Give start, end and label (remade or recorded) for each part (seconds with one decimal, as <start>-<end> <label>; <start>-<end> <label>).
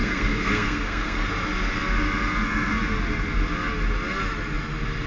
0.0-1.3 remade; 1.3-5.1 recorded